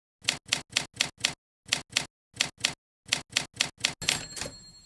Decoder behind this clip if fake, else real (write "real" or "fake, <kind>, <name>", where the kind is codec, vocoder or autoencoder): real